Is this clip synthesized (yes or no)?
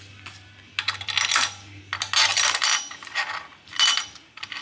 no